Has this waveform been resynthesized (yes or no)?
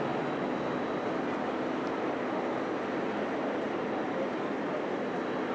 no